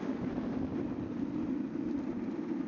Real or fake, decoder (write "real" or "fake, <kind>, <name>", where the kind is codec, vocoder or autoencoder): real